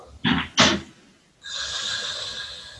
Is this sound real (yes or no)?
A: yes